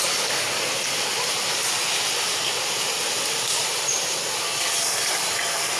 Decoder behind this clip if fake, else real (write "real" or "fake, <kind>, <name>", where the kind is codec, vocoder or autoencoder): real